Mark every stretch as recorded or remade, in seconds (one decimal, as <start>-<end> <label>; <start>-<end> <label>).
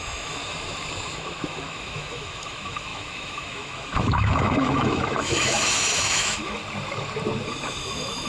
0.0-0.4 remade; 0.4-1.1 recorded; 1.1-6.6 remade; 6.6-7.8 recorded; 7.8-8.3 remade